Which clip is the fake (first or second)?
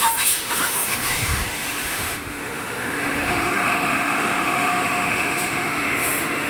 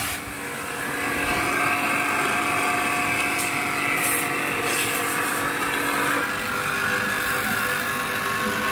first